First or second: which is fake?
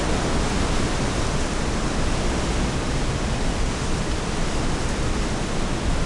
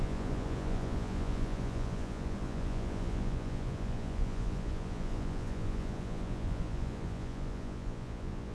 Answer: second